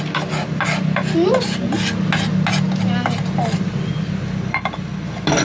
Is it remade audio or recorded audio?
recorded